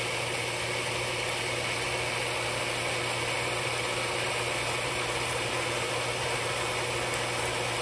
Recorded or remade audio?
recorded